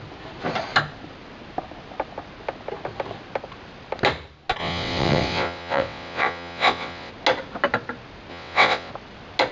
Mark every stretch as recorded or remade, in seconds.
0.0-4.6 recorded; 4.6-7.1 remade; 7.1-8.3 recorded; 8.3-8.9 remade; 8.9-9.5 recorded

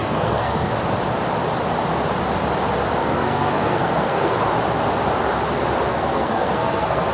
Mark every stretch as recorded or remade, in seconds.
0.0-0.7 remade; 0.7-3.0 recorded; 3.0-4.4 remade; 4.4-5.9 recorded; 5.9-7.1 remade

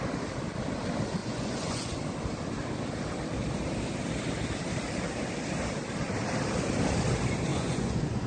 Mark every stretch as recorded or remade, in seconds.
0.0-1.2 recorded; 1.2-2.0 remade; 2.0-7.5 recorded; 7.5-8.3 remade